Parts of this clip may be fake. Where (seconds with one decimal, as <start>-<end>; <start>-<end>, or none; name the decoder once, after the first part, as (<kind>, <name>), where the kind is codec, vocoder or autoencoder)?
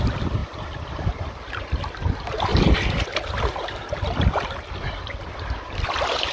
2.5-6.3 (vocoder, BigVGAN v2)